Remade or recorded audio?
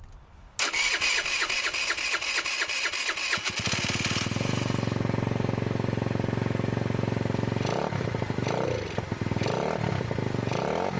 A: recorded